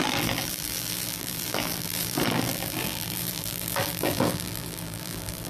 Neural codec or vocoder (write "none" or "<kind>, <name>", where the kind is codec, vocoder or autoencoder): vocoder, BigVGAN v2